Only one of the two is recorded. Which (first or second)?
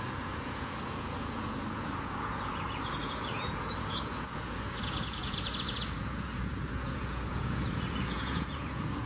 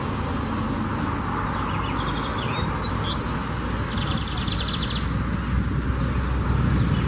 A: second